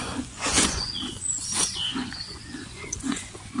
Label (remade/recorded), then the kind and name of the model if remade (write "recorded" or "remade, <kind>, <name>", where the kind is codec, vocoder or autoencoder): remade, vocoder, Vocos